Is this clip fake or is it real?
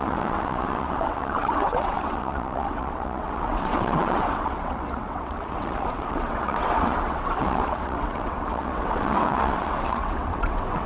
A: fake